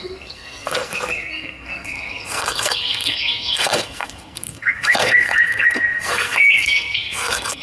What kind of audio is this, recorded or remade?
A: remade